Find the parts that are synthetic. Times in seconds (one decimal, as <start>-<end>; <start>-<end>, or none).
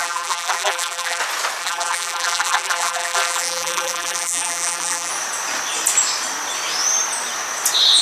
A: 0.0-1.2; 1.6-5.1